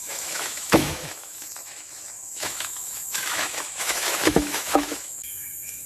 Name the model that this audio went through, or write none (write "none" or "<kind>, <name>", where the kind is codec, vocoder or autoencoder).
autoencoder, DAC-VAE